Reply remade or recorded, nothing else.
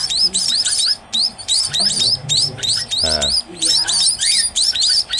remade